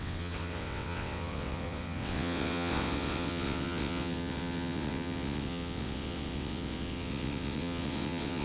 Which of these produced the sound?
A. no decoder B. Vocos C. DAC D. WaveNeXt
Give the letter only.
D